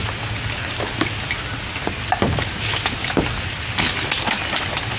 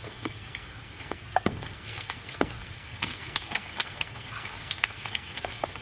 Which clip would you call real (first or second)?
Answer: first